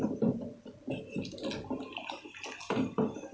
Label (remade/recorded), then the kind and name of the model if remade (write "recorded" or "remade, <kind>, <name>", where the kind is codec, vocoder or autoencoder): recorded